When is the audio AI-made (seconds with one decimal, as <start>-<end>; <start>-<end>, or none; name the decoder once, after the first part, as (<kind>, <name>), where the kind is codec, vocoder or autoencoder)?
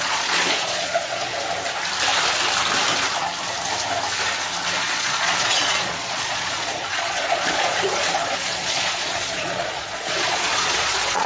0.0-1.3 (vocoder, Vocos); 4.8-11.3